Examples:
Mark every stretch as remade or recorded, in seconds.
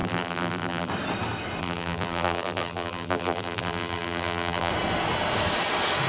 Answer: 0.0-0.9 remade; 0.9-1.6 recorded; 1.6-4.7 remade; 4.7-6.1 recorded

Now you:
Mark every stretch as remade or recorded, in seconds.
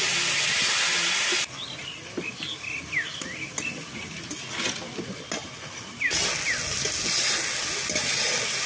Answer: 0.0-1.8 recorded; 1.8-2.3 remade; 2.3-8.7 recorded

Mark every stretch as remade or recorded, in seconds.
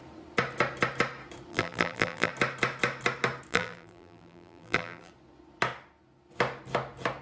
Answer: 0.0-1.5 recorded; 1.5-2.3 remade; 2.3-3.5 recorded; 3.5-5.1 remade; 5.1-7.2 recorded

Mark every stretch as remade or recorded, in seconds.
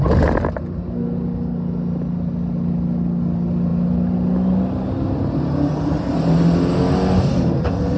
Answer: 0.0-8.0 recorded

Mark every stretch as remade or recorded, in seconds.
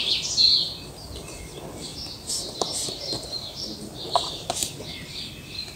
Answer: 0.0-5.8 recorded